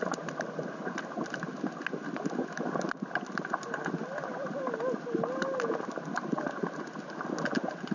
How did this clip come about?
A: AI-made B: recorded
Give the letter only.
B